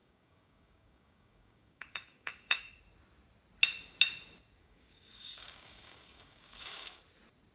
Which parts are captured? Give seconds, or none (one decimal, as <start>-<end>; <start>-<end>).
2.6-4.6; 7.0-7.5